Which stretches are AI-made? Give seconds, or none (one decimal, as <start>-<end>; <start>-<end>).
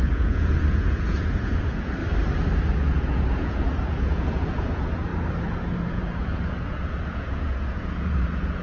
0.0-2.0; 2.6-5.1; 5.8-8.6